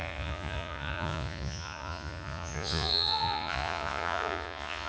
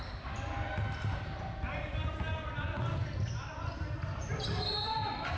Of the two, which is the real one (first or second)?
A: second